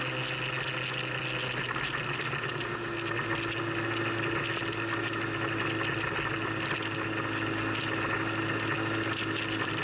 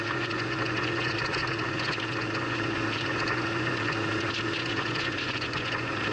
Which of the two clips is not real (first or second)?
second